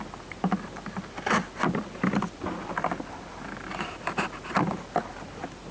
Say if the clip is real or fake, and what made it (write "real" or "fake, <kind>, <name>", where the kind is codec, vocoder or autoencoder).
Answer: real